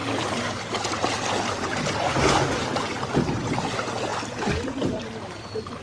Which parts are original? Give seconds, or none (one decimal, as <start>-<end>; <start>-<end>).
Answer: 0.0-5.8